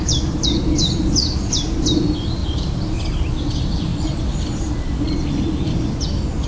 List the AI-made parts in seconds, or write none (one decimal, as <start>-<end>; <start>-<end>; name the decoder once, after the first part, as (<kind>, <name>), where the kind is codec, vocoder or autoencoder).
none